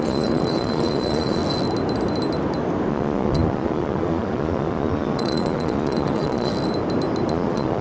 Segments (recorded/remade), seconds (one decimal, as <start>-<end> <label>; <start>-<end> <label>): 0.0-1.4 remade; 1.4-2.9 recorded; 2.9-6.5 remade; 6.5-7.3 recorded; 7.3-7.8 remade